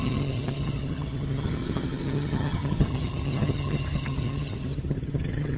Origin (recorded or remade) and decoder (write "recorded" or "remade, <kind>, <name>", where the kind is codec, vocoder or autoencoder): remade, vocoder, HiFi-GAN